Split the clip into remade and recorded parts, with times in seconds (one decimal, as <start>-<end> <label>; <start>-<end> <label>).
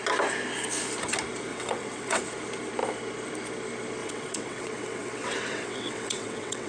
0.0-1.5 recorded; 1.5-2.2 remade; 2.2-4.0 recorded; 4.0-6.7 remade